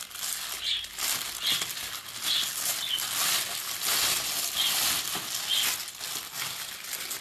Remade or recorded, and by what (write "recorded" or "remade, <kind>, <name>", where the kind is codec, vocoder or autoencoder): recorded